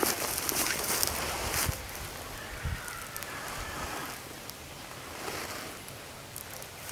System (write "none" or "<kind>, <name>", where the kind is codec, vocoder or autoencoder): none